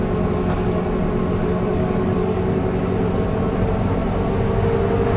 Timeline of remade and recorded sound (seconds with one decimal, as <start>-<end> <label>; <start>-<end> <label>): 0.0-1.7 recorded; 1.7-2.7 remade; 2.7-5.2 recorded